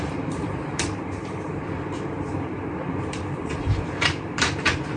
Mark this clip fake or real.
fake